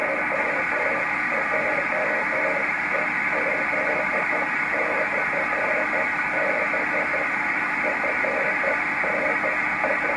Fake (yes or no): no